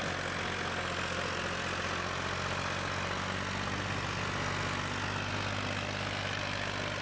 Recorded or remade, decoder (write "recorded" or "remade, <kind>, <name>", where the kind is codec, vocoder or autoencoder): recorded